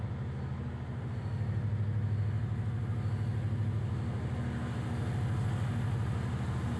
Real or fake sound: real